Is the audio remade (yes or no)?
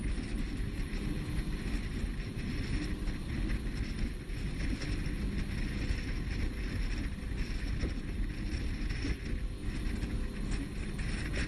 no